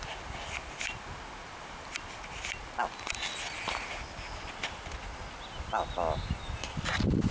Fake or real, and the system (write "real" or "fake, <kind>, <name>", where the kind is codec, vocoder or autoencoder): real